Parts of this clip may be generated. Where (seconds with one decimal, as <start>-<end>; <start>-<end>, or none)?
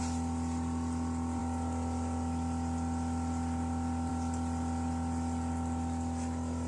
none